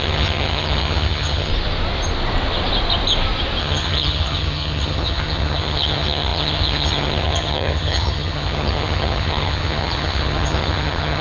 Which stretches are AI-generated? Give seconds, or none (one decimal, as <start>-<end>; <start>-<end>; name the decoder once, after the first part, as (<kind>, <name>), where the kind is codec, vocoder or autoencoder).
0.0-1.5 (vocoder, HiFi-GAN); 3.6-11.2